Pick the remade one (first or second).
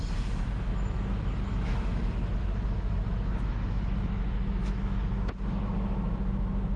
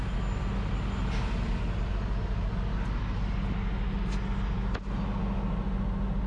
first